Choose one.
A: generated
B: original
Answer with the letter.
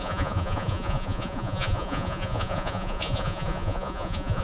A